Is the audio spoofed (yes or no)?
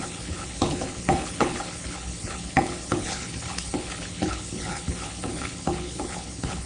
yes